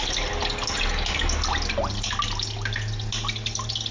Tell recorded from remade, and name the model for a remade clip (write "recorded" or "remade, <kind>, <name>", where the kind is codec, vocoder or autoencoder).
recorded